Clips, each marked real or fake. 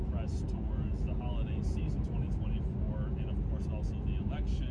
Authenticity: real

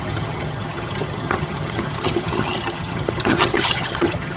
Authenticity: fake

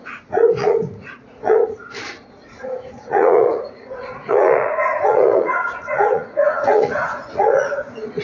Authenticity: fake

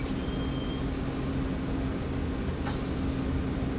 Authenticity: real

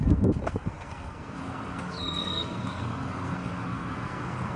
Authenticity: fake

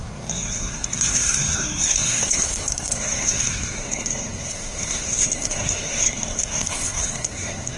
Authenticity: fake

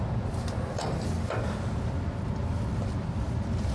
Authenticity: real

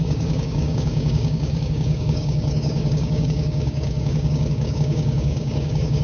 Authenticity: fake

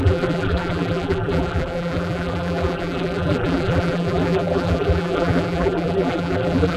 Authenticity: fake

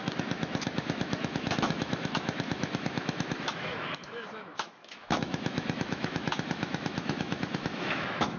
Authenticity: fake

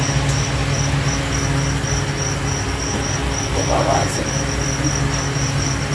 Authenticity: real